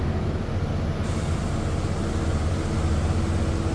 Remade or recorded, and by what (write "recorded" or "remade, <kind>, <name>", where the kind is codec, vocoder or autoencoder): recorded